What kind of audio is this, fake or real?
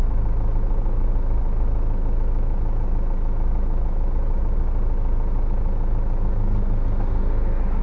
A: real